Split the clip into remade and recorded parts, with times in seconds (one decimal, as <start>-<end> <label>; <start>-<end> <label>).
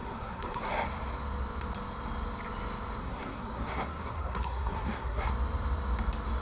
0.0-0.7 remade; 0.7-3.0 recorded; 3.0-5.3 remade; 5.3-6.4 recorded